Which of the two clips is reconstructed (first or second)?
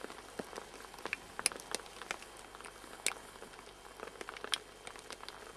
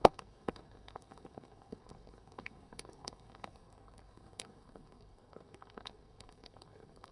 second